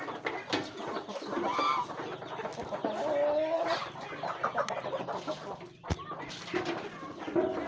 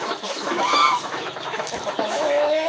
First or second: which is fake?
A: second